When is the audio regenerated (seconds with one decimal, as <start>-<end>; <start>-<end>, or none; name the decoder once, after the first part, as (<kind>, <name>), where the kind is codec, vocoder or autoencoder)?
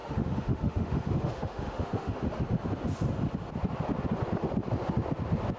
0.0-2.4 (autoencoder, DAC-VAE)